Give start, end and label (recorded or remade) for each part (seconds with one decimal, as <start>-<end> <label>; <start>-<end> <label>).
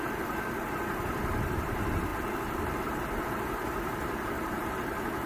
0.0-5.3 remade